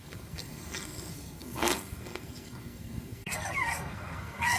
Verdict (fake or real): fake